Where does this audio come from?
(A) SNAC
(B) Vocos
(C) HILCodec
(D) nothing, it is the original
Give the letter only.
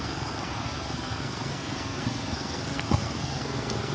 A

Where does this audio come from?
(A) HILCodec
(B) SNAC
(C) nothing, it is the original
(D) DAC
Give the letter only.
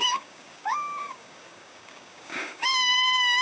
D